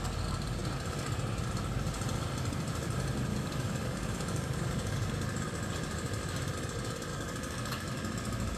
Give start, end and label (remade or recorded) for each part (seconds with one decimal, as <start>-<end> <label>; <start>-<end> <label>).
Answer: 0.0-3.3 recorded; 3.3-5.1 remade; 5.1-7.1 recorded; 7.1-7.9 remade; 7.9-8.6 recorded